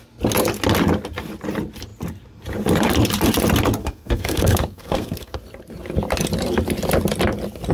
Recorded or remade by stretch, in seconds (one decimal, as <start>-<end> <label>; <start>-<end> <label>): 0.0-3.8 recorded; 3.8-5.4 remade; 5.4-7.7 recorded